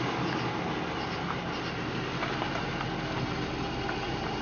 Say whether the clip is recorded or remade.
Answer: recorded